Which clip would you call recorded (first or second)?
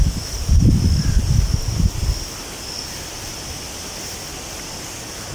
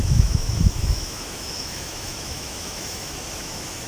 first